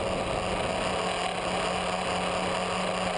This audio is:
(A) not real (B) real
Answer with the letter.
B